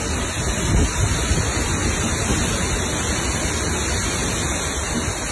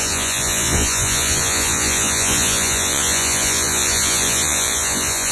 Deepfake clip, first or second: second